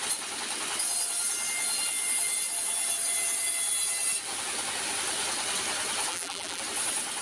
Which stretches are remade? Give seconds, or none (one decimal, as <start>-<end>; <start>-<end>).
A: 6.1-6.6

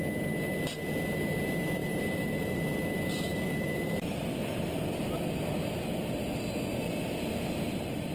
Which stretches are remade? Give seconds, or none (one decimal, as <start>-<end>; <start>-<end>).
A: 1.8-2.6; 3.3-4.6

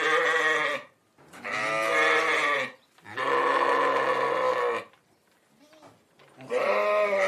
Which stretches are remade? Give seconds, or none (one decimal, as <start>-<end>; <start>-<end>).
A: none

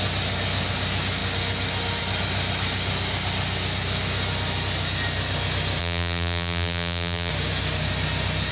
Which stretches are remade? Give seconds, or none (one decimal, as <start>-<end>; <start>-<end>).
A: 5.8-7.3

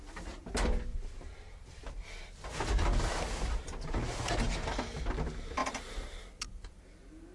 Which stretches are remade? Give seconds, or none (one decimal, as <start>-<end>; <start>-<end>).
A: 0.9-1.8; 5.6-6.1

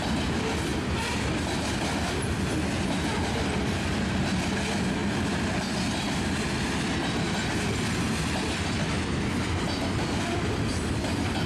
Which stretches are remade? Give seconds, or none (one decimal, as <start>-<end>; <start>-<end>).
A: 0.0-5.0; 8.2-11.5

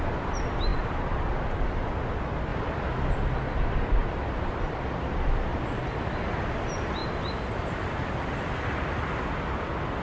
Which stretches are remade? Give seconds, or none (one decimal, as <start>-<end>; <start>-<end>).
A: 0.7-1.6; 2.5-3.1; 4.0-5.0; 7.0-8.3

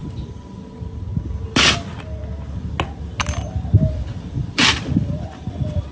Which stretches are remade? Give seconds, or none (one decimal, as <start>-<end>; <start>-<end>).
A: 0.0-1.1; 3.9-5.9